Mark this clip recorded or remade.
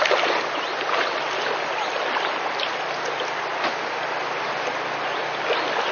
recorded